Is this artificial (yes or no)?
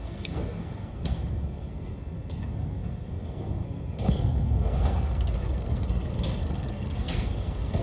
yes